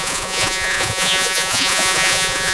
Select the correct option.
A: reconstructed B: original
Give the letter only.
A